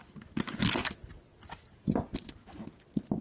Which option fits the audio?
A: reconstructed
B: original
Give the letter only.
B